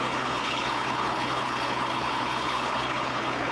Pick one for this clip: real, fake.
fake